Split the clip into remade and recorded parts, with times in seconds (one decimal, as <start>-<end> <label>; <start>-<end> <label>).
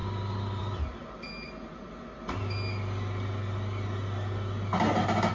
0.0-5.3 recorded